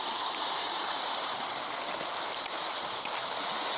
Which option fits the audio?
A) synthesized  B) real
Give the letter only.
B